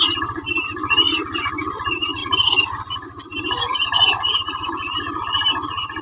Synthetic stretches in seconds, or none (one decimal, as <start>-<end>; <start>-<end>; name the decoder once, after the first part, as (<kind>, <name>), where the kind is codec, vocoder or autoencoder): none